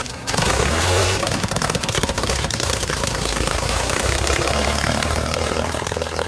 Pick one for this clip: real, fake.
fake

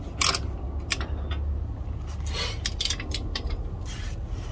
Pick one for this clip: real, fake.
real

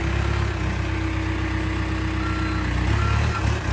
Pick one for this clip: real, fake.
real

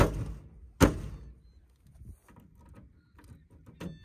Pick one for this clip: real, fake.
real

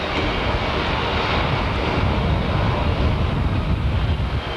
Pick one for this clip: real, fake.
real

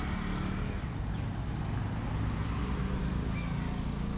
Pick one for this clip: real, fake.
real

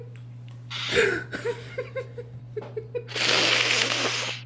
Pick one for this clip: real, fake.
real